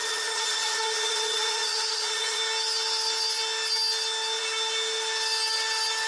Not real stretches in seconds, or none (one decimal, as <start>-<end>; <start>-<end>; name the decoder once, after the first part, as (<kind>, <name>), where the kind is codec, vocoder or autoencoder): 0.0-2.4 (vocoder, Vocos)